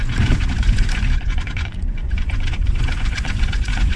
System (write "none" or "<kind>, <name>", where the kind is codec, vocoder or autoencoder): vocoder, Vocos